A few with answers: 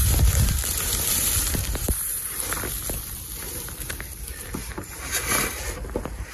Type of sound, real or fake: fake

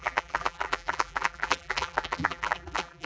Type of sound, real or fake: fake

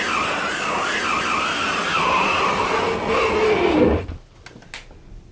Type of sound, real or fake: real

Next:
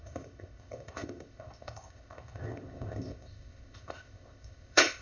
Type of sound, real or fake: fake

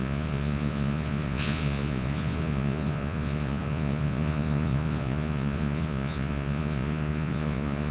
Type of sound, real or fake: fake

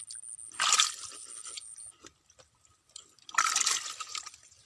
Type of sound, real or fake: real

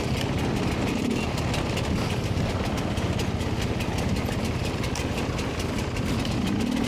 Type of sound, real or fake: real